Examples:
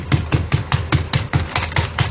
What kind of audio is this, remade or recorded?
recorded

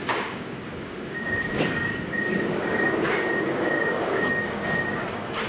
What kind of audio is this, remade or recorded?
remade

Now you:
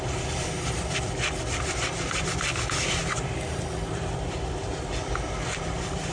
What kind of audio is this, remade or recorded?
remade